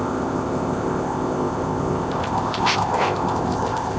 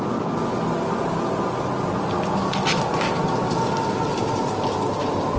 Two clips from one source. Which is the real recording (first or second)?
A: second